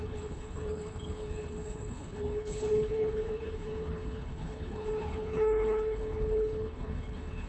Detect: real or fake fake